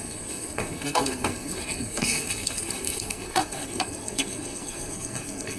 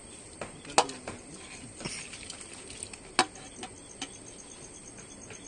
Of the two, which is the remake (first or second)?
first